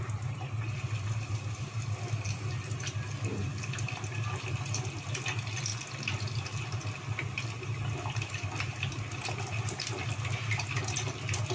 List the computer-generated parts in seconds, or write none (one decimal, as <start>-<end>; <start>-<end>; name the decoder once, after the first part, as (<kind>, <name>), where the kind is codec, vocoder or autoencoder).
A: none